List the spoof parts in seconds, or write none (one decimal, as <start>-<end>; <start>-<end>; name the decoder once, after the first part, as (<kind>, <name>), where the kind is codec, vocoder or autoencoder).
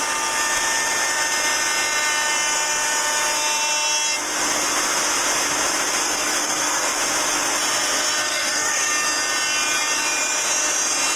6.0-7.0 (codec, SNAC); 8.2-8.9